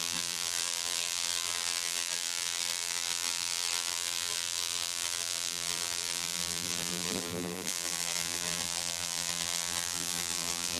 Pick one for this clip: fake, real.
fake